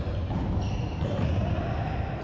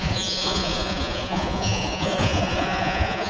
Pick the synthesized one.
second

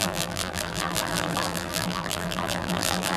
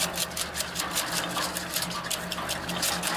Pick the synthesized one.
first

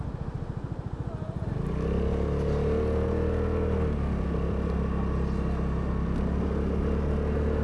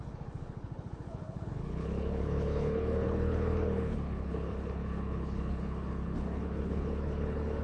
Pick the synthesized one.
second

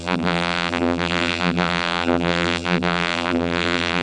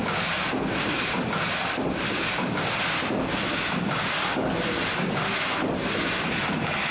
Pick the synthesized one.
first